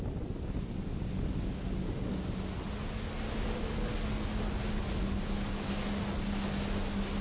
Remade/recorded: recorded